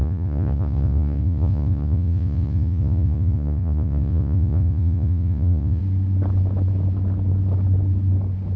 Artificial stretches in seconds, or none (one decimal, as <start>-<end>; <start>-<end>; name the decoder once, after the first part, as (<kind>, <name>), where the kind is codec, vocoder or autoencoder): 0.0-5.8 (vocoder, Vocos)